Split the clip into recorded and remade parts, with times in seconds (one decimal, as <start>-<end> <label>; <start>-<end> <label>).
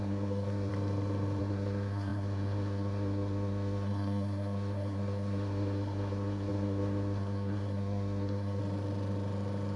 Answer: 0.0-0.7 remade; 0.7-1.4 recorded; 1.4-8.6 remade; 8.6-9.8 recorded